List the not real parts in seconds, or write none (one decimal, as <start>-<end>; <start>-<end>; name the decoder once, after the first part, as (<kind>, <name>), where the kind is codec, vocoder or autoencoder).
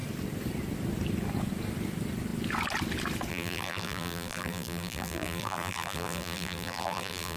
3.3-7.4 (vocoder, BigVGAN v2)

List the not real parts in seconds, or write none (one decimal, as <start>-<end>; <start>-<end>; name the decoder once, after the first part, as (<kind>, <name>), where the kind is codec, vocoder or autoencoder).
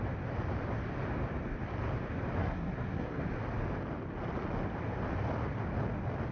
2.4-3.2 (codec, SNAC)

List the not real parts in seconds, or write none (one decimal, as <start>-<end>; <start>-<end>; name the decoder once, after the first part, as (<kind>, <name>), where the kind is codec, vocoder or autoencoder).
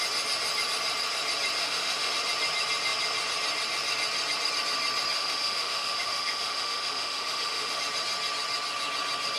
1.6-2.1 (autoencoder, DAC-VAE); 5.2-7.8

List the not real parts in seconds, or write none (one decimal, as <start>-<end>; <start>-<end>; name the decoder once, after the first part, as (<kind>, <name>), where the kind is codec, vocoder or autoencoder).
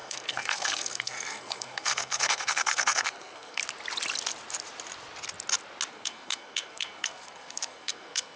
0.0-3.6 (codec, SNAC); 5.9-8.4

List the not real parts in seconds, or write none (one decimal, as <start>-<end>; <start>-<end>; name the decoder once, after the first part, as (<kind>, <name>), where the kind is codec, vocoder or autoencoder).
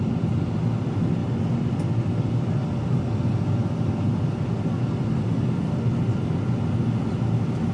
none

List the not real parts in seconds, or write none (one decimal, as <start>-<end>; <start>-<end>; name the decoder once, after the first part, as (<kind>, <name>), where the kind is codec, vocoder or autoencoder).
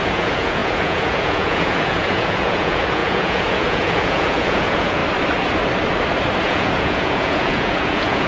0.0-5.0 (vocoder, Vocos); 6.4-8.3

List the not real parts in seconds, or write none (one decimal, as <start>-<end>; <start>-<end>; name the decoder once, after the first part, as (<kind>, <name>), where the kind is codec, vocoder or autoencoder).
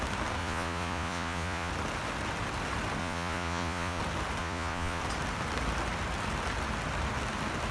0.4-1.7 (vocoder, Vocos); 3.0-4.0; 4.4-5.0